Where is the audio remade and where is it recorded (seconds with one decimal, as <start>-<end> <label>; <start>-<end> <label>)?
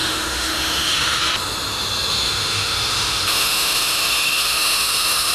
0.0-1.2 remade; 1.2-2.1 recorded; 2.1-5.3 remade